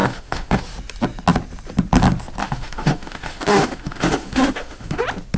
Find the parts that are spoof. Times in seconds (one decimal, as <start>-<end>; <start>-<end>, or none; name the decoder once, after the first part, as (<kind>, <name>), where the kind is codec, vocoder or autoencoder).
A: 0.0-0.6 (autoencoder, DAC-VAE); 2.4-5.0

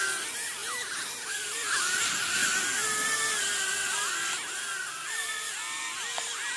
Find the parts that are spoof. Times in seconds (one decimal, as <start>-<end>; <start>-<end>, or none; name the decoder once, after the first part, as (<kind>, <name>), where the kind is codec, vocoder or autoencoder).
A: none

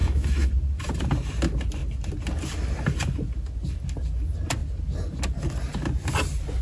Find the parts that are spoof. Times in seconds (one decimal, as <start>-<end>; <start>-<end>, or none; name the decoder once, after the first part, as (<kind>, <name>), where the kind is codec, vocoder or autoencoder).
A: 0.0-0.5 (autoencoder, DAC-VAE)

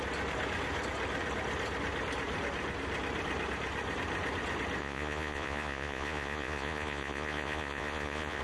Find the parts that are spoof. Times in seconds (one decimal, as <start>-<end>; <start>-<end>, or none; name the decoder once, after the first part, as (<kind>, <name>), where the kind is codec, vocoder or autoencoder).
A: 4.8-8.4 (vocoder, Vocos)

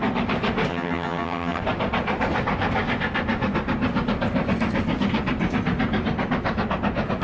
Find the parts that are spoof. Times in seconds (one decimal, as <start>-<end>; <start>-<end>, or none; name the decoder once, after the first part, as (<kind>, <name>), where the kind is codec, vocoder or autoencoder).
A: 0.7-1.6 (vocoder, HiFi-GAN)